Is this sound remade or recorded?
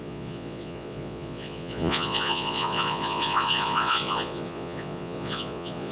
remade